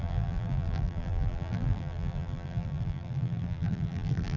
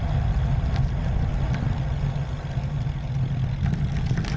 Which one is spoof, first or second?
first